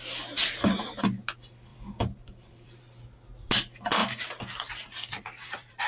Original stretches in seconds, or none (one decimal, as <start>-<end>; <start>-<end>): 0.0-1.7; 2.8-4.0